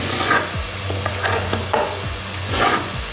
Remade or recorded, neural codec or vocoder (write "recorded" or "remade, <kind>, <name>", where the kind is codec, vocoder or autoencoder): remade, vocoder, Vocos